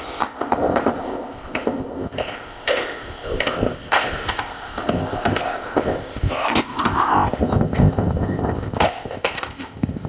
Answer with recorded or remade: remade